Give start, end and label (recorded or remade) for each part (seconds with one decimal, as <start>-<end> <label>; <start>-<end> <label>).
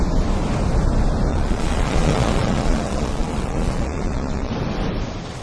0.0-1.3 recorded; 1.3-4.5 remade; 4.5-5.4 recorded